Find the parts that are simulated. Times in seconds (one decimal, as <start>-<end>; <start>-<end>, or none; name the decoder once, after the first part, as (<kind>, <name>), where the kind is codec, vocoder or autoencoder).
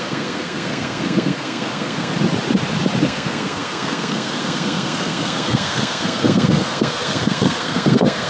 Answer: 0.0-2.1 (codec, SNAC); 3.0-8.3